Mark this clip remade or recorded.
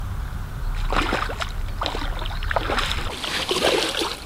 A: recorded